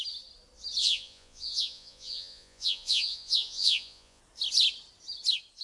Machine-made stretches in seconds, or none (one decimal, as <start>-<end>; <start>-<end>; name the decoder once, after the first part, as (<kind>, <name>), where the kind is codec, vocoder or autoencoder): 0.8-4.2 (vocoder, Vocos)